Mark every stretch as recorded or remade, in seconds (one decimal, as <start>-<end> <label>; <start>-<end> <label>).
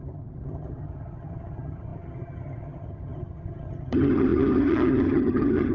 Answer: 0.0-5.7 remade